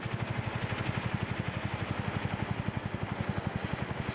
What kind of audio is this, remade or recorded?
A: recorded